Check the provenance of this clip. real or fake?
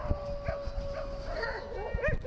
real